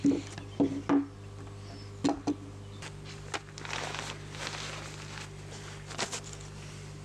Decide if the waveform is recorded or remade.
recorded